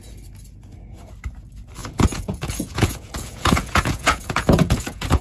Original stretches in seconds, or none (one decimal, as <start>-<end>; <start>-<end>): 0.0-1.8